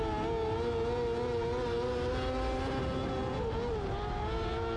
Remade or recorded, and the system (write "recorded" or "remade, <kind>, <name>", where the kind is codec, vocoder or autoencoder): recorded